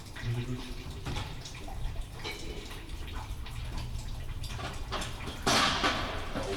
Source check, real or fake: fake